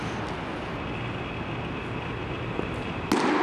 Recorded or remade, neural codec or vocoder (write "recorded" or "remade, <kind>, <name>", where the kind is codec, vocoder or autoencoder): recorded